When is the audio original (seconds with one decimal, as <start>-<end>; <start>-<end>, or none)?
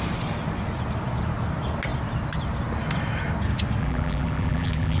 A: 0.0-3.8